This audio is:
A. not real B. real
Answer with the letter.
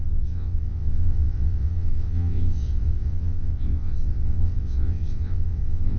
A